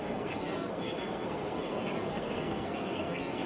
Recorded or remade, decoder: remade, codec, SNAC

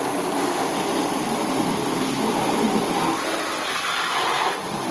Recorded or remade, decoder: recorded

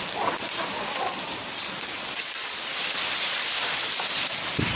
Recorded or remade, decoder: recorded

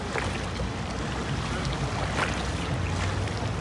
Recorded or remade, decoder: recorded